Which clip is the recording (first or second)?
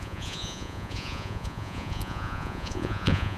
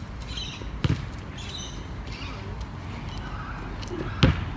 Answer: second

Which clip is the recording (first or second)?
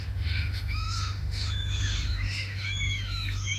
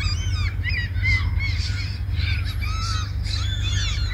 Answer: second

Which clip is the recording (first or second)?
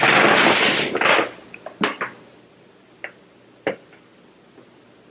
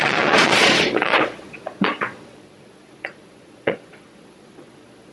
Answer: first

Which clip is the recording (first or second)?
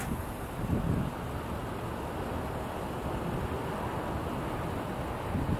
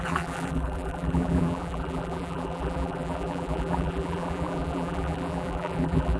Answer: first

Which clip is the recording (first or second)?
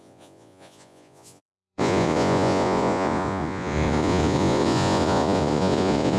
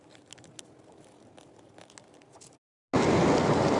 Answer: second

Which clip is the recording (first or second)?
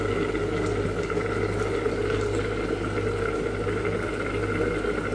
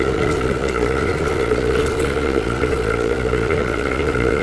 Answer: first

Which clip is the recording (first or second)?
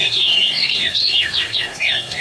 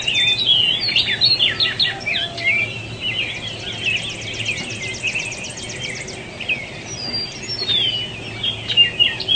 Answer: second